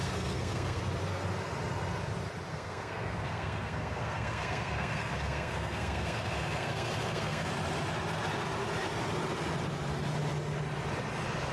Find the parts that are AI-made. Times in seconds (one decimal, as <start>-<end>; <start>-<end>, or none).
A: 0.0-0.8; 2.5-7.5